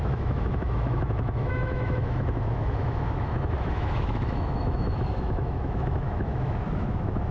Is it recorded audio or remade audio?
remade